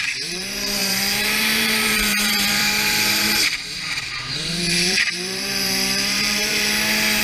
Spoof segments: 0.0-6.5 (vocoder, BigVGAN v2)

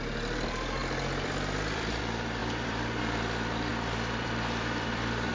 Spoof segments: 0.8-2.0 (vocoder, BigVGAN v2); 2.4-3.0; 3.7-5.3

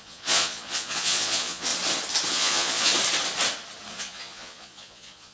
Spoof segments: 0.0-1.7 (vocoder, Vocos); 2.3-2.9; 3.9-5.3

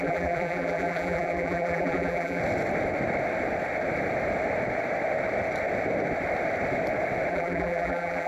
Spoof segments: 0.0-2.4 (vocoder, BigVGAN v2); 7.3-8.3

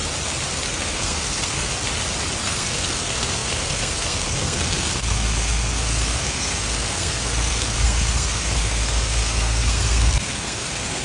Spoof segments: 0.7-1.7 (codec, SNAC); 2.4-11.0